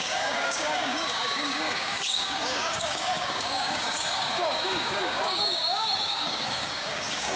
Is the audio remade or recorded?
remade